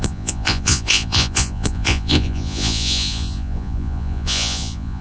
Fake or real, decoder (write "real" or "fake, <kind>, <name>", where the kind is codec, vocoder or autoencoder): fake, vocoder, Vocos